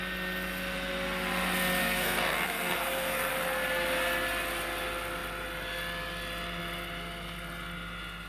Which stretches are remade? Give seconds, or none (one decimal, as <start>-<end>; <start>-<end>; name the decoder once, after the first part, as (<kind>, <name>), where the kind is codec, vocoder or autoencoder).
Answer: 1.8-3.3 (codec, SNAC)